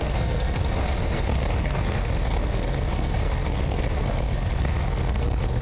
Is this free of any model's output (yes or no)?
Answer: no